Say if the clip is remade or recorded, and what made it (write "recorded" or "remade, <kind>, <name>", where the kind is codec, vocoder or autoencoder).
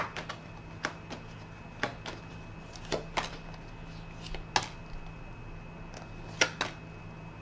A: recorded